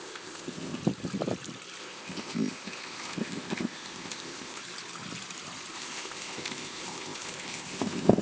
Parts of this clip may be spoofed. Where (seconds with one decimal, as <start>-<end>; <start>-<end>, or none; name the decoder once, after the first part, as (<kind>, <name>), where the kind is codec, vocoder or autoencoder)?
0.0-0.8 (codec, ZipCodec); 1.8-4.6; 5.7-8.2

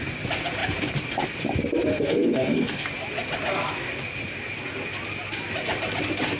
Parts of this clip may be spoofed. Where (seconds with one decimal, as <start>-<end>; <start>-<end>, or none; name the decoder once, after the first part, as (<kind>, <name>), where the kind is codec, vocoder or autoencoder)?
1.9-2.8 (codec, SNAC)

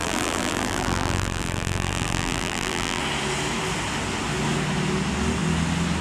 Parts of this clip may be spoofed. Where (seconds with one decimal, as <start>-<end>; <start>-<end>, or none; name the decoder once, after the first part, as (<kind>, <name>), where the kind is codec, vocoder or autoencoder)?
0.0-3.0 (vocoder, BigVGAN v2)